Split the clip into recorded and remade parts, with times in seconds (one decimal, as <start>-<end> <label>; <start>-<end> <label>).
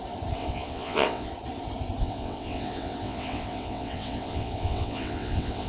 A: 0.0-0.4 recorded; 0.4-1.3 remade; 1.3-2.0 recorded; 2.0-5.7 remade